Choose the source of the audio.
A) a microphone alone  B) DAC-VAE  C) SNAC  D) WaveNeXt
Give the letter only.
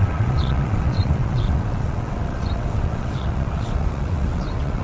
D